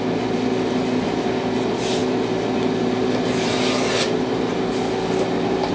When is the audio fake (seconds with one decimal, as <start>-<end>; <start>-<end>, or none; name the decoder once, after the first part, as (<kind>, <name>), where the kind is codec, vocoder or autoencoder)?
none